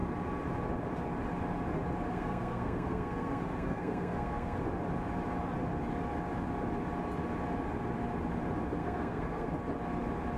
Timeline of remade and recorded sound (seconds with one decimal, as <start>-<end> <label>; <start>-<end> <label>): 0.0-2.1 recorded; 2.1-4.6 remade; 4.6-8.8 recorded; 8.8-9.5 remade; 9.5-10.4 recorded